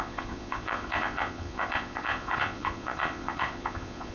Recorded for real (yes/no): no